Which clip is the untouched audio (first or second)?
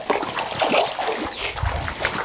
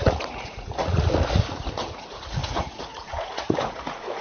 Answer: first